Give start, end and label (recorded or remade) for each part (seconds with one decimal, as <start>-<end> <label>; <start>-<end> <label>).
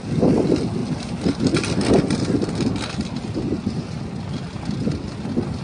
0.0-5.6 recorded